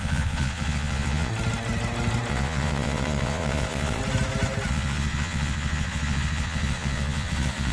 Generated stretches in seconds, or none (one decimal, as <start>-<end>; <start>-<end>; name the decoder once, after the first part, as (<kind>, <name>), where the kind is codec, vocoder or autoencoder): 0.0-1.3 (vocoder, Vocos); 2.3-4.0; 4.7-7.7